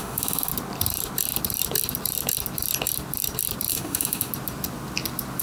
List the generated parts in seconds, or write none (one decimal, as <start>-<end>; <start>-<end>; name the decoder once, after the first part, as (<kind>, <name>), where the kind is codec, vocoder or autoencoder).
0.0-0.5 (autoencoder, DAC-VAE); 3.7-4.3